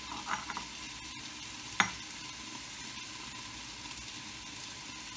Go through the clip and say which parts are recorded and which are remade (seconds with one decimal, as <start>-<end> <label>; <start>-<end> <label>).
0.0-5.2 recorded